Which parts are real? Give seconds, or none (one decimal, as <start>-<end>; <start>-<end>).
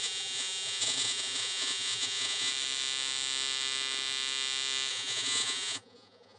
2.5-4.9